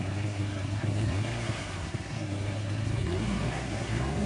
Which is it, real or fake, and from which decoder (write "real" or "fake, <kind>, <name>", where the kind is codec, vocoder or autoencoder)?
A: fake, codec, SNAC